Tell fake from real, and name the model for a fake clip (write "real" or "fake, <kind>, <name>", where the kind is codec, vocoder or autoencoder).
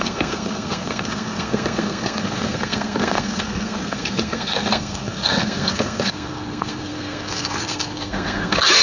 fake, codec, SNAC